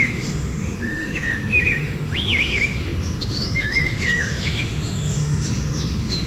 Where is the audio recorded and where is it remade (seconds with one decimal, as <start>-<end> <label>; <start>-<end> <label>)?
0.0-6.3 remade